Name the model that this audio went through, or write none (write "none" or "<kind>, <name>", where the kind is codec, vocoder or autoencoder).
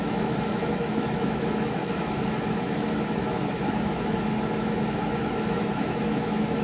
autoencoder, DAC-VAE